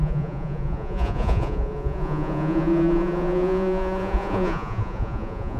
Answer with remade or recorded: remade